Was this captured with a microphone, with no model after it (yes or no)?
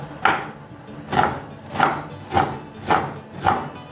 yes